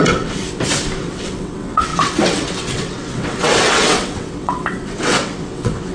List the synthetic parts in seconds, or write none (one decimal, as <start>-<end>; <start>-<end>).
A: 0.0-0.4; 1.0-5.9